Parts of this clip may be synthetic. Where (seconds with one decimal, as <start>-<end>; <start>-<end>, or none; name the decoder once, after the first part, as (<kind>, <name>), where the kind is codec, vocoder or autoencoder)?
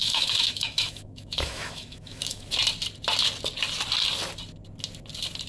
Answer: 0.0-2.5 (autoencoder, DAC-VAE)